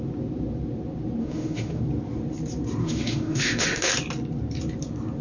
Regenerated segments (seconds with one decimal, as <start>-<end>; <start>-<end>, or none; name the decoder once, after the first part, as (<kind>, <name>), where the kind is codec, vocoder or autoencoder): 1.2-1.8 (autoencoder, DAC-VAE); 2.8-3.9